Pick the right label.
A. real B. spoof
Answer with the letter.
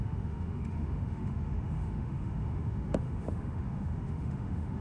B